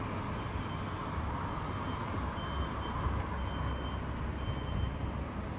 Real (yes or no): yes